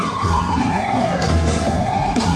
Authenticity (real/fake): fake